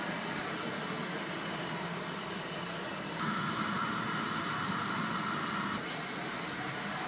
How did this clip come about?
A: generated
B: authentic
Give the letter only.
A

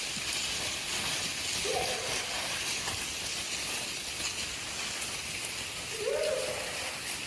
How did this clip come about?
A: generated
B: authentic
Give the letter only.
B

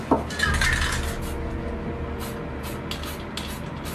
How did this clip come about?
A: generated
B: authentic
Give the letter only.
B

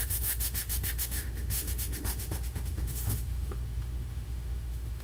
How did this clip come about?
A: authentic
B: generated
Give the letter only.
B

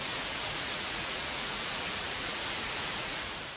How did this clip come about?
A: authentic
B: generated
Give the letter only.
B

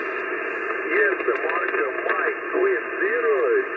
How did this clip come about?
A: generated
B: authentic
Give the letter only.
B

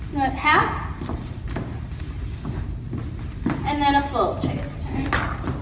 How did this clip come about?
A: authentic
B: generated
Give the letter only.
A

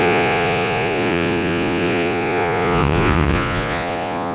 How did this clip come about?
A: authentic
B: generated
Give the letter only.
B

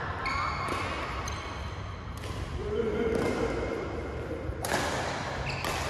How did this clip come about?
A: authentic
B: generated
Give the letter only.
A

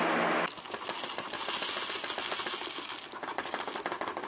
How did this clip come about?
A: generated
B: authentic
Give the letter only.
B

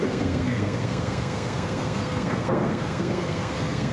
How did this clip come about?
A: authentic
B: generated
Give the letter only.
B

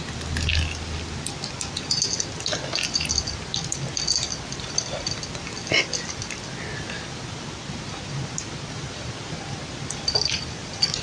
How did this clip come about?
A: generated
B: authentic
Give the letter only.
B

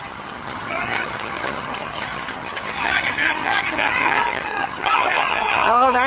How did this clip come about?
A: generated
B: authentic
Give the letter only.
A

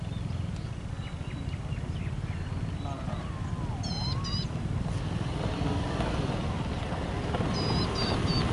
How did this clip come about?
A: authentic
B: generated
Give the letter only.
A